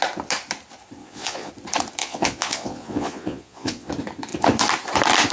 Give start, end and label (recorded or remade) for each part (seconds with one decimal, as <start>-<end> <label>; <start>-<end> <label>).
0.0-1.0 recorded; 1.0-1.5 remade; 1.5-2.0 recorded; 2.0-3.9 remade; 3.9-5.3 recorded